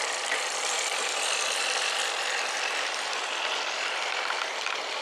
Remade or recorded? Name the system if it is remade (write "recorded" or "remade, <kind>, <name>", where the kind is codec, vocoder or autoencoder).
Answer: remade, vocoder, BigVGAN v2